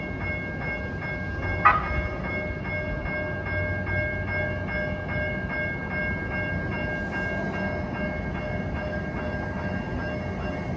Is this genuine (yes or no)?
yes